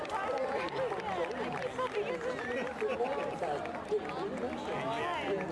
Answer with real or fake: real